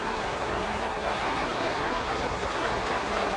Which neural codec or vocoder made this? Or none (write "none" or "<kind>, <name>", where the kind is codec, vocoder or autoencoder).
codec, SNAC